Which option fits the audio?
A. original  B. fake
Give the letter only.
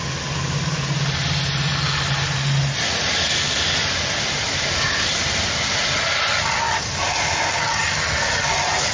A